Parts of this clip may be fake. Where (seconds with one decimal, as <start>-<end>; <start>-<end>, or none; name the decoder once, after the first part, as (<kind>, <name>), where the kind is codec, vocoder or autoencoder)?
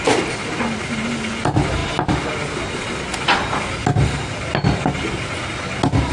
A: none